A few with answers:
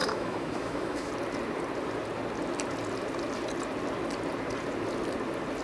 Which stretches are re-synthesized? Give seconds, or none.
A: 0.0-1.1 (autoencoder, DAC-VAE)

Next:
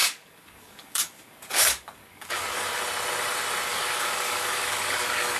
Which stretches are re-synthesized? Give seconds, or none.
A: 0.0-2.8 (codec, DAC); 3.7-5.4

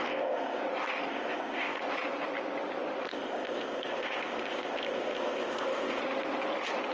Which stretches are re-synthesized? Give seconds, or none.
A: 0.0-0.6 (codec, ZipCodec); 1.1-1.8; 3.1-6.0

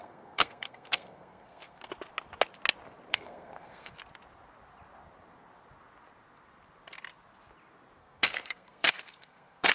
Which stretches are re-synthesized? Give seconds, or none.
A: 0.0-1.9 (codec, SNAC); 3.1-3.9; 8.0-9.7